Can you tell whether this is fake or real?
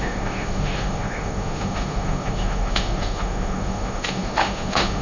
fake